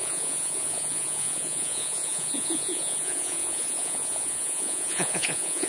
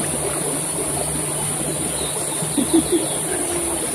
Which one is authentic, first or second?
second